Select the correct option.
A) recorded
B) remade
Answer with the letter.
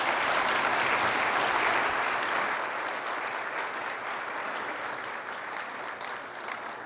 A